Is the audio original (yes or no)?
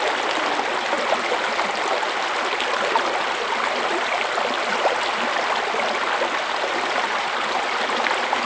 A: yes